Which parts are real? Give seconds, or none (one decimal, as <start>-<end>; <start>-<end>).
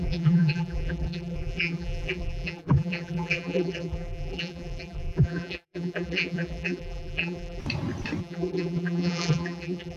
7.6-8.2